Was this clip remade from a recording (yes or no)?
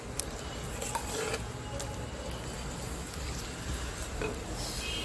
no